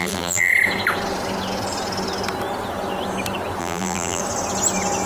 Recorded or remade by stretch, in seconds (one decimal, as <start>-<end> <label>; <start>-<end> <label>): 0.0-0.5 remade; 0.5-3.6 recorded; 3.6-4.2 remade; 4.2-5.1 recorded